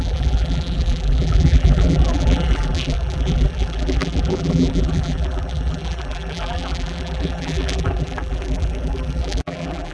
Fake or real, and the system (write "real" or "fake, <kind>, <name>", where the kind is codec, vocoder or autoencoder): fake, vocoder, BigVGAN v2